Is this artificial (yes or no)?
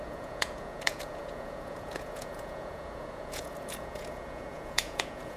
yes